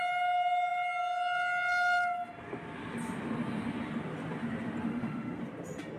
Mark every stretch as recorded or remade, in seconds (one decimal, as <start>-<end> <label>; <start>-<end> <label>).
0.0-4.9 recorded; 4.9-5.4 remade; 5.4-6.0 recorded